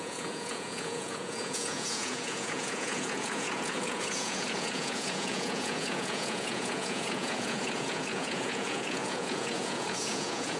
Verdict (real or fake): fake